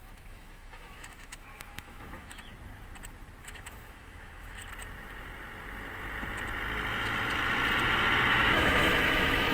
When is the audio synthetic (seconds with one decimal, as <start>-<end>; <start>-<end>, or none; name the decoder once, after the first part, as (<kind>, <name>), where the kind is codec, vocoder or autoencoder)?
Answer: 0.0-2.5 (autoencoder, DAC-VAE); 3.4-4.6; 8.3-9.5